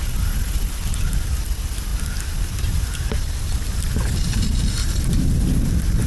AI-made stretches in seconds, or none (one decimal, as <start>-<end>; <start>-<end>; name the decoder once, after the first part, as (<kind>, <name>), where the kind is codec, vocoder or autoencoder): none